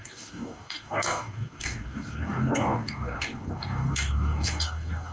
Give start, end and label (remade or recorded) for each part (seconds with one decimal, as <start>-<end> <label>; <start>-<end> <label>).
0.0-5.1 remade